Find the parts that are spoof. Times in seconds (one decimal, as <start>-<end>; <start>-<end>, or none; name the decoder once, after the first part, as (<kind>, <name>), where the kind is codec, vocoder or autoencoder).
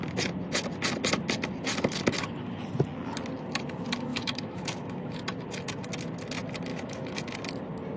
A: 4.1-5.2 (autoencoder, DAC-VAE); 6.7-7.3